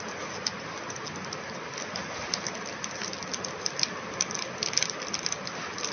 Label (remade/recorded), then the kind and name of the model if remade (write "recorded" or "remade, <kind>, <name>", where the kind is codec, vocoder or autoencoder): recorded